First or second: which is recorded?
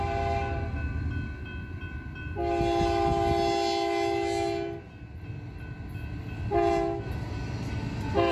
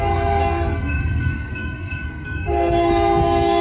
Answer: first